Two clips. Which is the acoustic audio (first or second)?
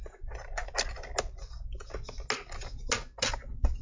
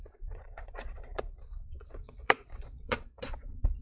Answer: first